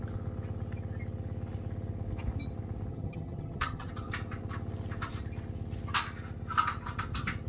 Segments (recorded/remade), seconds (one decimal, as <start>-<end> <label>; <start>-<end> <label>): 0.0-2.9 recorded; 2.9-3.9 remade; 3.9-7.5 recorded